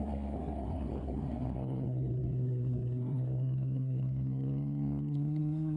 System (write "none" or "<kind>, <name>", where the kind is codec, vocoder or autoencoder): codec, SNAC